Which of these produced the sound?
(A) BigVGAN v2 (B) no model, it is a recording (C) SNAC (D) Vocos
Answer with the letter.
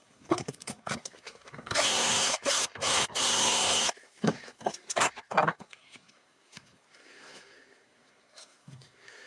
C